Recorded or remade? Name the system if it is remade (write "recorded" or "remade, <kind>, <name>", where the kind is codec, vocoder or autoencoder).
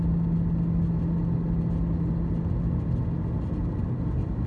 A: recorded